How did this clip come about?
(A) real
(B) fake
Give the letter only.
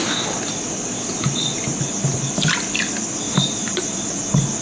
A